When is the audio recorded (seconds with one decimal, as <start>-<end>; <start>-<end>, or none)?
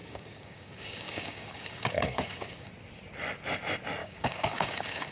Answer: 2.7-4.0